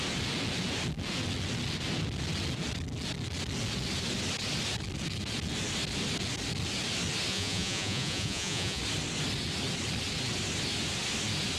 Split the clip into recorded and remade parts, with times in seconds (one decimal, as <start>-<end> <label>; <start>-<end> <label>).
0.0-7.3 recorded; 7.3-8.8 remade; 8.8-11.6 recorded